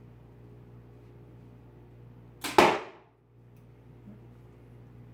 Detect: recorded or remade recorded